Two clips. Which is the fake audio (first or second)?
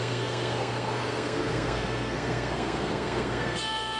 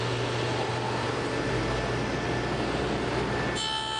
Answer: first